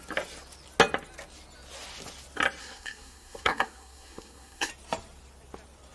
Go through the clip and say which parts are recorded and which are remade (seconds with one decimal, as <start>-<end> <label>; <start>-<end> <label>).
0.0-2.6 recorded; 2.6-4.7 remade; 4.7-5.9 recorded